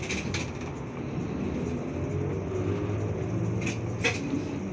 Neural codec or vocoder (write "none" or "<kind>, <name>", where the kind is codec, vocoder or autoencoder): none